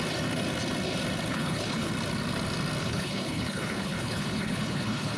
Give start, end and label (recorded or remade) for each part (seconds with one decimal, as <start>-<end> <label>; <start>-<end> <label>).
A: 0.0-1.3 recorded; 1.3-1.9 remade; 1.9-2.8 recorded; 2.8-5.2 remade